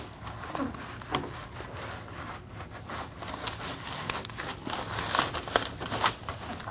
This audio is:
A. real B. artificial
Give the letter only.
A